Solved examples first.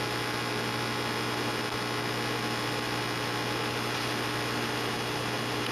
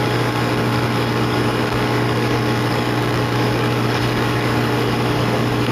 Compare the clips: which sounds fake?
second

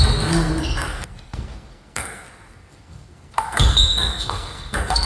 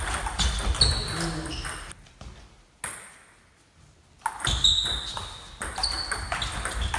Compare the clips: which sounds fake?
first